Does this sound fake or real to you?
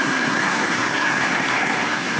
fake